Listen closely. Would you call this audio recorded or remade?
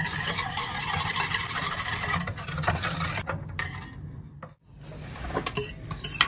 recorded